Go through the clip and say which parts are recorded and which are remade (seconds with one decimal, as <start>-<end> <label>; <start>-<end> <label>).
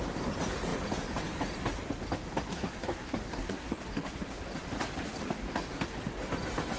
0.0-2.5 recorded; 2.5-3.7 remade; 3.7-6.8 recorded